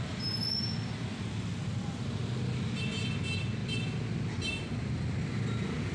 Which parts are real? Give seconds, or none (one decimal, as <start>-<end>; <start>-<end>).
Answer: 0.0-5.9